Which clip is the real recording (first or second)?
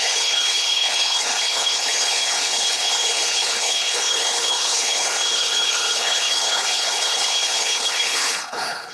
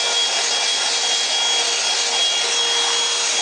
second